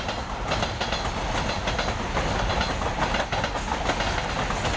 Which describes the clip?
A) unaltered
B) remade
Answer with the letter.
A